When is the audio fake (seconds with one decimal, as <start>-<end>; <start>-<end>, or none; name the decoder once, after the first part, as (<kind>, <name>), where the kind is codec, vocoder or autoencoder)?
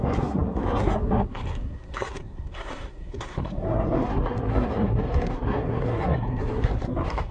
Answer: 0.0-7.3 (codec, SNAC)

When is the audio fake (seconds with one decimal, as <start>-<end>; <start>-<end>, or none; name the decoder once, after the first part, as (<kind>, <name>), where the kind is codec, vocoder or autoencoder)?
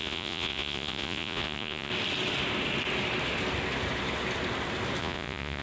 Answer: 0.0-1.9 (vocoder, Vocos); 5.0-5.6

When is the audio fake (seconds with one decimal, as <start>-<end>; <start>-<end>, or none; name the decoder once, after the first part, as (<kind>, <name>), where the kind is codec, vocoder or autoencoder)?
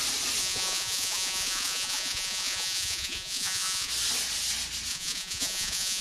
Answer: 0.4-3.9 (vocoder, Vocos); 4.9-6.0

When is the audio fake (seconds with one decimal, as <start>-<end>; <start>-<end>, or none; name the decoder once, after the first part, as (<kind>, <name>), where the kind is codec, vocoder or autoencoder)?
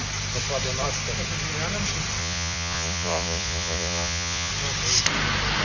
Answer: 2.2-4.5 (vocoder, Vocos)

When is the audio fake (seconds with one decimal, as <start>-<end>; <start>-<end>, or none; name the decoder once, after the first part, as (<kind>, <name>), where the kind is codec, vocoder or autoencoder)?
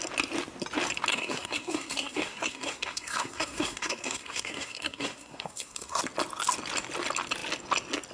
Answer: 1.1-6.0 (codec, SNAC)